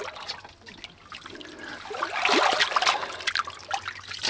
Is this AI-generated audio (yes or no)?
no